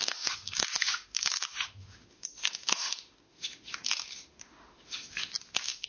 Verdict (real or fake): fake